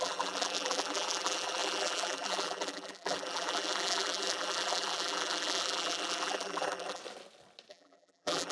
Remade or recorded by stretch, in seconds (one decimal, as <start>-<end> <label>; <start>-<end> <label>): 0.0-7.0 remade; 7.0-7.7 recorded; 7.7-8.5 remade